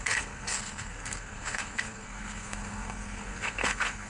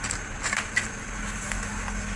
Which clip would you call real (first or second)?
second